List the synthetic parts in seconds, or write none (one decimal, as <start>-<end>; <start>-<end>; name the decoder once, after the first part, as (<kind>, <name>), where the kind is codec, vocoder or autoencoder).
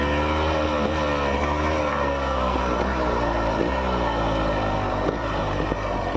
1.9-2.6 (codec, SNAC)